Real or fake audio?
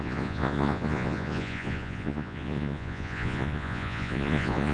fake